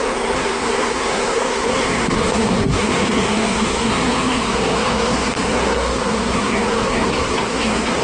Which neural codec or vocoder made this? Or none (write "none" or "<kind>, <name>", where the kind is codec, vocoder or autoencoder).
codec, SNAC